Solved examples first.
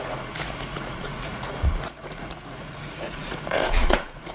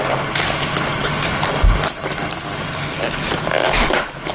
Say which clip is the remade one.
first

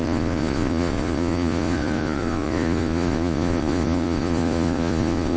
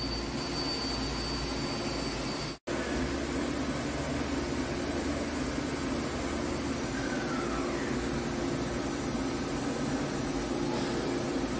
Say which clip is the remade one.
first